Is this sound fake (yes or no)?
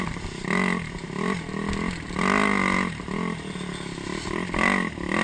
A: no